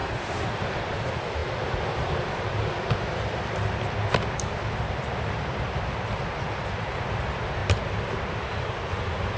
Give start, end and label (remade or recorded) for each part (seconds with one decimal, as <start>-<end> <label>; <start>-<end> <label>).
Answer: 0.0-1.4 recorded; 1.4-6.0 remade; 6.0-9.4 recorded